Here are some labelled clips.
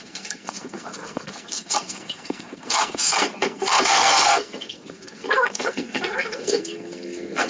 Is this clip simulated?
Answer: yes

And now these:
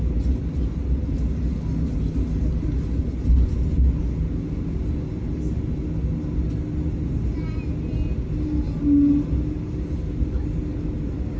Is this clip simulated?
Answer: no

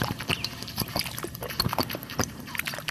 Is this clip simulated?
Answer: no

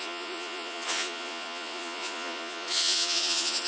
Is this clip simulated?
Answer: yes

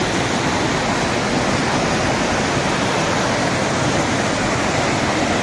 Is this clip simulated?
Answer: no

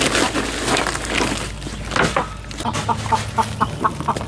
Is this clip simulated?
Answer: no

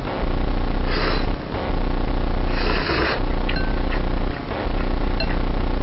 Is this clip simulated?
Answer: no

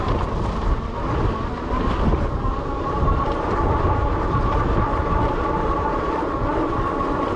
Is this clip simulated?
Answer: yes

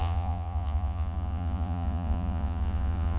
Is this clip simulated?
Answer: yes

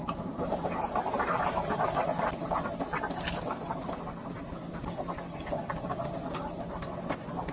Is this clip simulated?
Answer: no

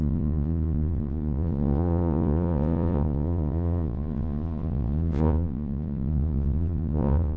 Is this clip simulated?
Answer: yes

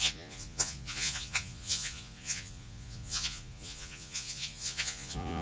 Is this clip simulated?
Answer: yes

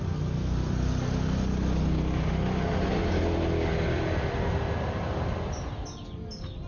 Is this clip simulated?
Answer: no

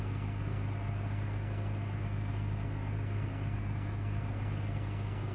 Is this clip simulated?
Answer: yes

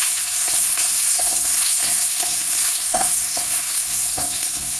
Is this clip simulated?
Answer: yes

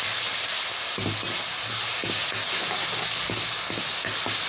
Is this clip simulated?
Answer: no